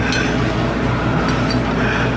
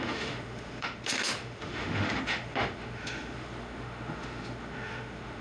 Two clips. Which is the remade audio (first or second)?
second